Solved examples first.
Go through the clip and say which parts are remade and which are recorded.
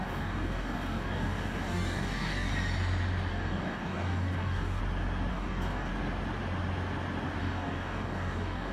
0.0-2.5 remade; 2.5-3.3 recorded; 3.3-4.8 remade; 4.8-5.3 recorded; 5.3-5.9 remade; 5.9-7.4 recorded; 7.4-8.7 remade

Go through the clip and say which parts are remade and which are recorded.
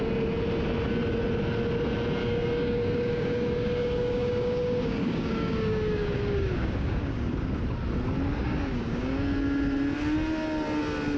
0.0-2.2 recorded; 2.2-7.5 remade; 7.5-8.4 recorded; 8.4-9.3 remade; 9.3-11.2 recorded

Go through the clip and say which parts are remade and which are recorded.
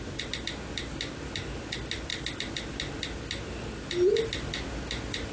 0.0-5.3 recorded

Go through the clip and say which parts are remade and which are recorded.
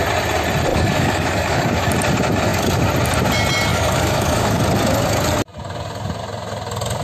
0.0-0.7 recorded; 0.7-1.9 remade; 1.9-3.7 recorded; 3.7-4.6 remade; 4.6-7.0 recorded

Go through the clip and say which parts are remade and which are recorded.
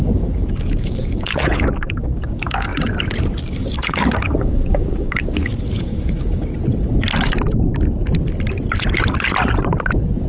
0.0-2.7 remade; 2.7-3.4 recorded; 3.4-6.5 remade; 6.5-10.3 recorded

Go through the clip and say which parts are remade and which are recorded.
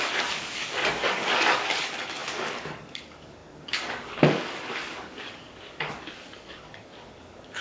0.0-7.6 remade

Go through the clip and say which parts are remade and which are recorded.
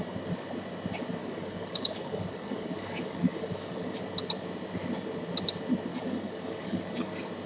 0.0-1.2 recorded; 1.2-4.0 remade; 4.0-5.9 recorded; 5.9-7.1 remade; 7.1-7.5 recorded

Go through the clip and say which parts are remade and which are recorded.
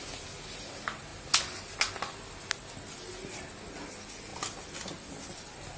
0.0-5.8 recorded